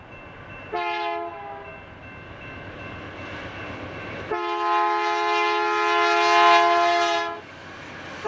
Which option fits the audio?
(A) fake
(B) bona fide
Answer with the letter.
B